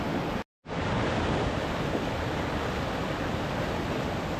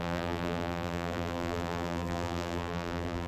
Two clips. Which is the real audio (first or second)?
first